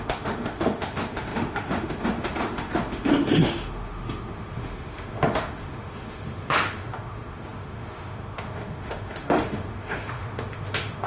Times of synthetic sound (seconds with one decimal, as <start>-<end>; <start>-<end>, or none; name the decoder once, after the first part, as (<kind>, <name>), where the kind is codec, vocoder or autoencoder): 0.0-11.1 (autoencoder, DAC-VAE)